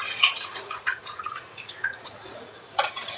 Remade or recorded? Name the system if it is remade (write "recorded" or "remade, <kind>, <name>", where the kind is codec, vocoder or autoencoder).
remade, vocoder, Vocos